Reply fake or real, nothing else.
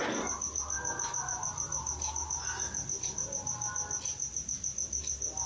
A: real